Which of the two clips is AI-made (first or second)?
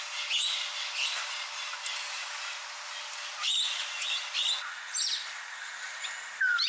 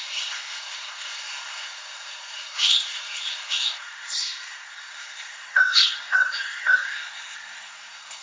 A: second